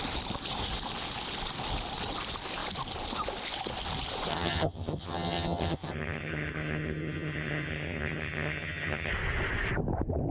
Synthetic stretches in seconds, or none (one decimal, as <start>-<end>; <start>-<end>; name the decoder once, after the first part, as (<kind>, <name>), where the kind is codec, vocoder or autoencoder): 4.3-9.1 (vocoder, HiFi-GAN)